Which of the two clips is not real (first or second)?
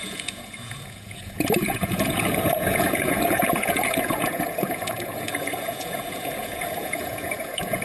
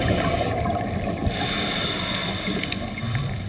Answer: first